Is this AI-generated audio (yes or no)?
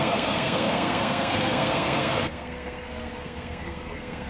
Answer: yes